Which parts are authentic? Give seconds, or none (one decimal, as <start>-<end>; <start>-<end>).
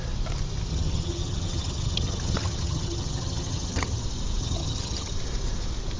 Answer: 0.0-0.7; 4.0-4.4; 5.1-6.0